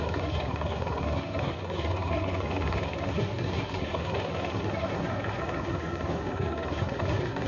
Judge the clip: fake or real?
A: fake